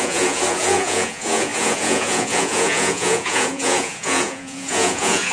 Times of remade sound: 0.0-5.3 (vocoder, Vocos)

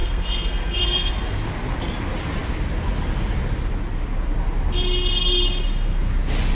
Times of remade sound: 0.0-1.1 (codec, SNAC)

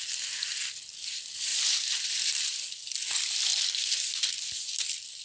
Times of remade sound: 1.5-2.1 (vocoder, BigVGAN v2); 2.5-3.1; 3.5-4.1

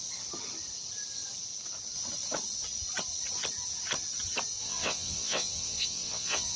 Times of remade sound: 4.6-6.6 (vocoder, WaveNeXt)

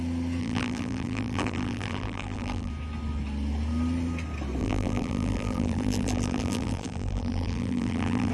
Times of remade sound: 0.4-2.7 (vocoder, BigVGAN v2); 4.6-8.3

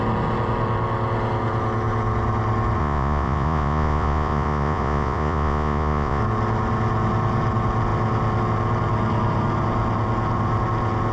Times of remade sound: 2.8-6.2 (vocoder, Vocos)

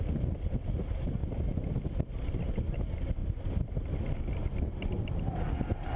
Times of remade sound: none